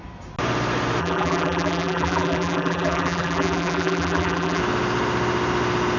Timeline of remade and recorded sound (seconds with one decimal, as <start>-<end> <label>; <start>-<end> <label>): 0.0-1.0 recorded; 1.0-4.6 remade; 4.6-6.0 recorded